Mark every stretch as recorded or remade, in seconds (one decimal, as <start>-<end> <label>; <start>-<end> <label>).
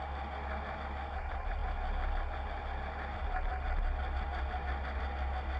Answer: 0.0-5.6 recorded